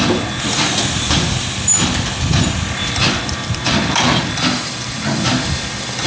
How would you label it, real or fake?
fake